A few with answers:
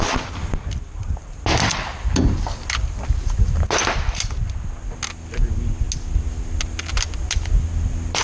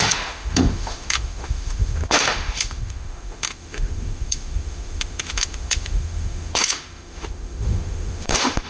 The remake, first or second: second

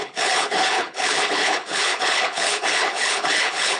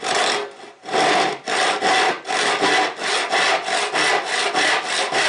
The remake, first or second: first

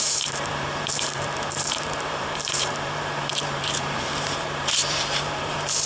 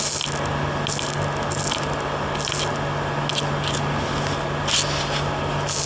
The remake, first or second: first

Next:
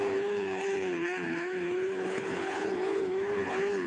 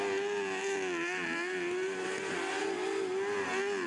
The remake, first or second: first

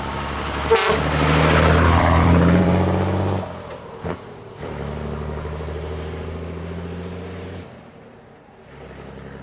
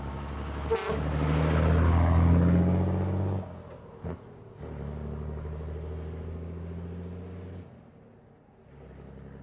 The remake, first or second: first